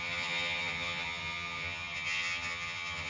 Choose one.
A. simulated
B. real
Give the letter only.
A